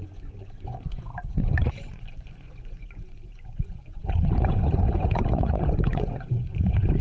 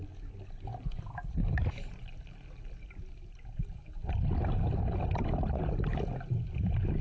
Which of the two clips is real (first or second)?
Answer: second